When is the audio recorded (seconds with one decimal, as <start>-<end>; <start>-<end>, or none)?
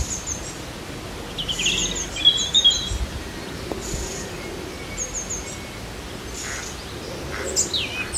0.0-8.2